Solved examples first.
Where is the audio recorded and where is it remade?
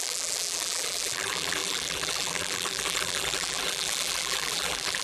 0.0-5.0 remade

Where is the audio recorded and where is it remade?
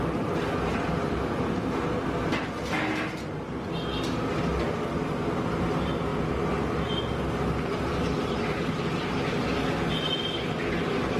0.0-11.2 recorded